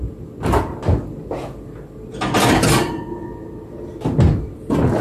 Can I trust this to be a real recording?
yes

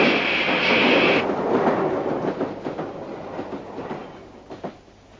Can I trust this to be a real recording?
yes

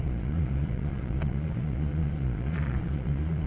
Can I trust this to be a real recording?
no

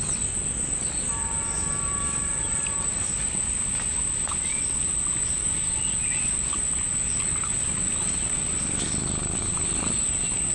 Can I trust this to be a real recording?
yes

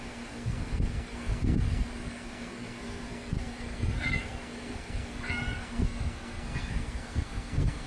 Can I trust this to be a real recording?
no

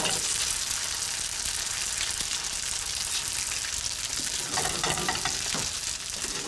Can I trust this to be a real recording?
yes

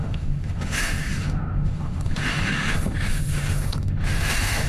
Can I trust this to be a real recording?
no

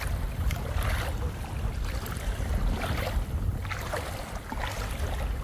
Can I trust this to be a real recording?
yes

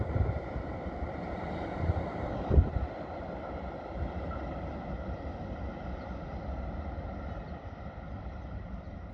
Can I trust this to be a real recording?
yes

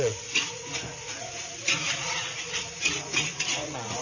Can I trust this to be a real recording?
no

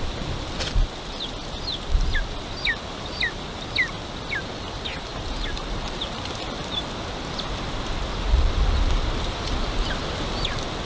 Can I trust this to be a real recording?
yes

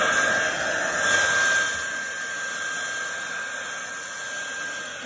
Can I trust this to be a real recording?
yes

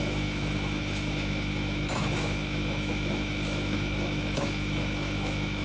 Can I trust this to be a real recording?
no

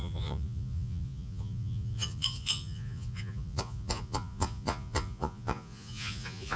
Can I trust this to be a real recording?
no